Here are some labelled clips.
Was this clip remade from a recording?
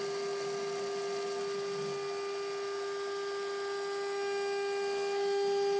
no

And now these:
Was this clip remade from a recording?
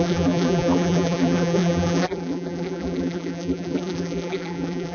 yes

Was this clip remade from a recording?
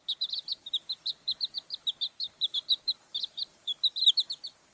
yes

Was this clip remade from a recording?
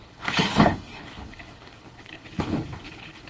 yes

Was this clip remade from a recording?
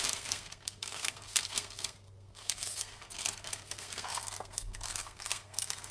yes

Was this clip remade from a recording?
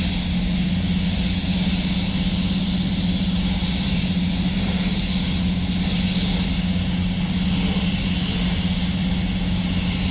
no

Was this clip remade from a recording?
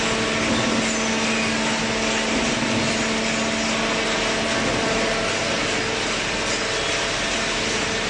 no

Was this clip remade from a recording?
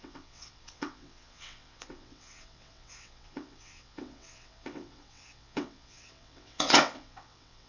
yes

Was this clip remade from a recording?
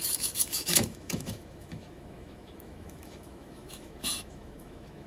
yes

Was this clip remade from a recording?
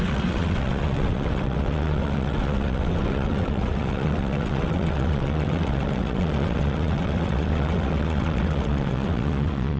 yes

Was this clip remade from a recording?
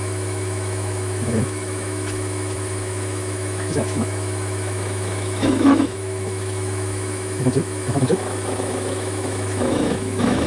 yes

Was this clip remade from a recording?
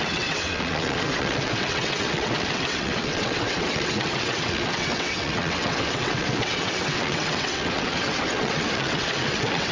yes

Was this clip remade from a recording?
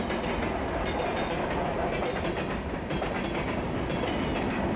no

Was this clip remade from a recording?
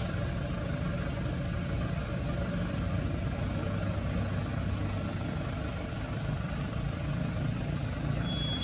no